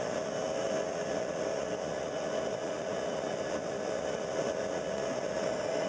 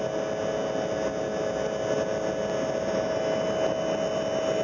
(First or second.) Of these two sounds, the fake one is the first